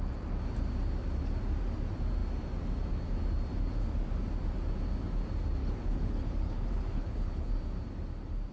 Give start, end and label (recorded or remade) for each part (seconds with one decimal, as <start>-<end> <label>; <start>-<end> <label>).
0.0-5.6 recorded; 5.6-7.5 remade; 7.5-8.5 recorded